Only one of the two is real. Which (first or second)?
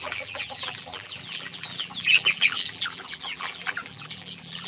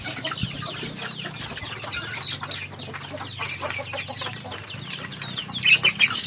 second